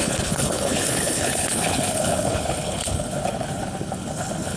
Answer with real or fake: fake